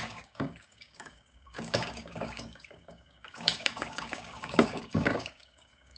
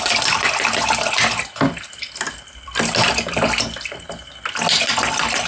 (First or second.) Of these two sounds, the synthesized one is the first